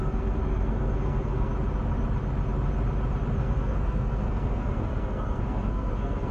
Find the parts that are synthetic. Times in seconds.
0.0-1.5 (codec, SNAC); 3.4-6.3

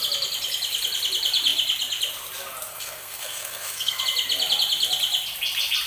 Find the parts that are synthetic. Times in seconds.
2.7-4.0 (codec, SNAC)